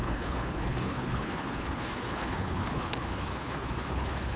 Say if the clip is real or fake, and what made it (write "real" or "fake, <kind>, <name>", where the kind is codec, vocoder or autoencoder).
fake, codec, HILCodec